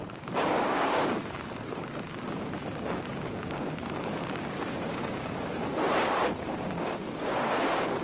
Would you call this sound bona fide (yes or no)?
no